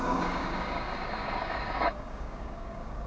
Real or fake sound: fake